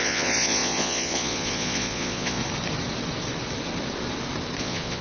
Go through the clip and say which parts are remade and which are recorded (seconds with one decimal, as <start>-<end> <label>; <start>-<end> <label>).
0.0-2.4 remade; 2.4-4.6 recorded; 4.6-5.0 remade